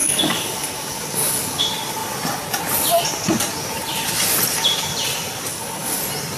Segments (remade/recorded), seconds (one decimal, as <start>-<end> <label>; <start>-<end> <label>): 0.0-1.6 remade; 1.6-5.5 recorded; 5.5-6.0 remade; 6.0-6.4 recorded